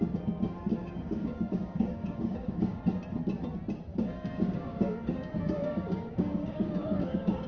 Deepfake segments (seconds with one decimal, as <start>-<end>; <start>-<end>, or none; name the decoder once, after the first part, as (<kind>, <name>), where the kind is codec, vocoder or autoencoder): 0.7-2.8 (codec, DAC); 3.9-7.5